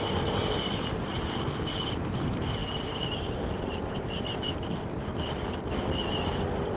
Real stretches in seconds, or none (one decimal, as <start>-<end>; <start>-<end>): 0.4-1.9; 5.1-6.1